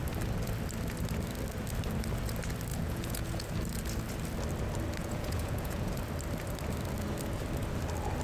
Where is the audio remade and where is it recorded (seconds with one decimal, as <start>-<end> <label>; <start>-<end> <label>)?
0.0-2.7 recorded; 2.7-3.4 remade; 3.4-5.0 recorded; 5.0-5.9 remade; 5.9-8.2 recorded